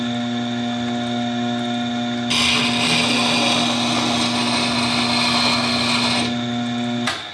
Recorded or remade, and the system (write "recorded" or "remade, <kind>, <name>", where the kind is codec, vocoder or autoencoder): recorded